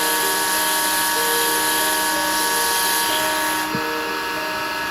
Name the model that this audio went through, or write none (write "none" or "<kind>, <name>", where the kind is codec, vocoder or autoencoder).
none